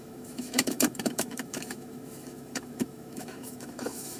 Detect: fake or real fake